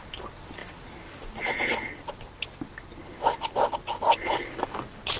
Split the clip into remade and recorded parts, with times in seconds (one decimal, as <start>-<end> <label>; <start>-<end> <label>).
0.0-5.2 recorded